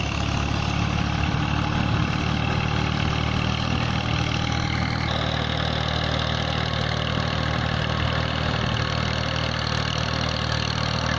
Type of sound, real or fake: real